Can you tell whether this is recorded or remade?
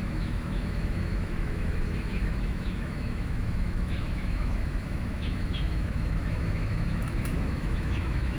remade